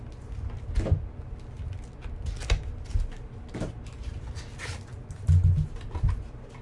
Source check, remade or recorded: recorded